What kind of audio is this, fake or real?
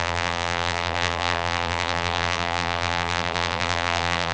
fake